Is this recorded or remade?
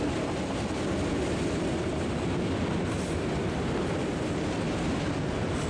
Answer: recorded